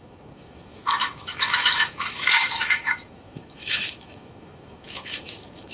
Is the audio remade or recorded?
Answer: remade